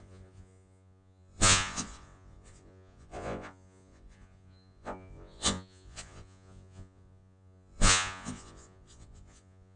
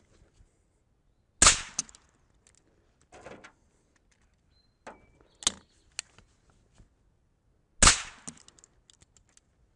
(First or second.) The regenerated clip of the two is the first